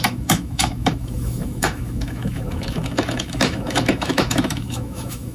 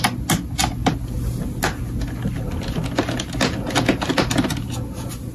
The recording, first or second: second